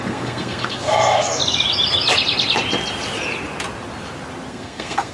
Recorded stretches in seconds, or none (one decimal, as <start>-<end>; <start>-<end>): 1.4-4.5

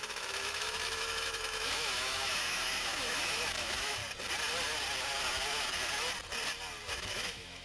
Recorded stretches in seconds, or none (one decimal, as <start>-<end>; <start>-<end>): 4.0-6.9

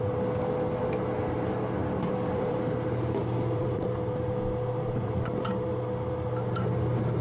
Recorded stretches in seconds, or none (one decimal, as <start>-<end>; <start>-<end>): 0.0-1.8; 6.1-7.2

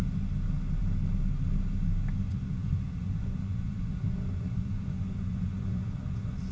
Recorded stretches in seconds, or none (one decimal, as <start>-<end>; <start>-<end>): 0.0-2.3

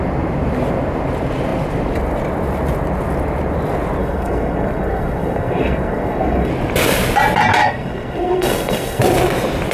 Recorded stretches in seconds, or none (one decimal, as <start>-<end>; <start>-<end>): 0.0-4.0; 6.5-7.6; 9.0-9.7

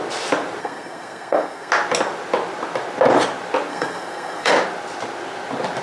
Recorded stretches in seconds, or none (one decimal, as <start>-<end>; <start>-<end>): 0.0-0.6; 1.7-3.7; 4.5-5.8

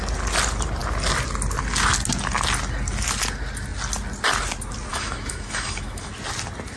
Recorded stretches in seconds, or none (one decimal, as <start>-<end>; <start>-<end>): 0.0-4.9; 6.1-6.8